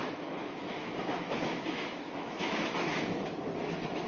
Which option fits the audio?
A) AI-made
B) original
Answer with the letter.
A